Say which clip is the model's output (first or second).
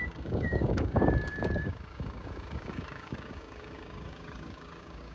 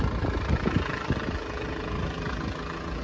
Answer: first